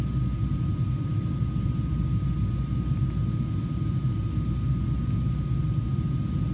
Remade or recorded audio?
recorded